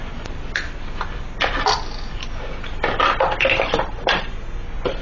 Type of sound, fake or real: real